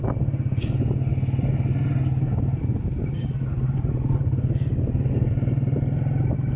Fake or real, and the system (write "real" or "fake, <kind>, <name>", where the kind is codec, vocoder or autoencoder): real